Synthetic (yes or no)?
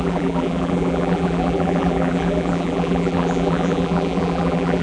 yes